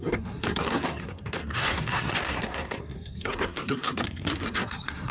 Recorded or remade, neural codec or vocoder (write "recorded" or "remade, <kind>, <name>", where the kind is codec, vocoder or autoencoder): remade, codec, SNAC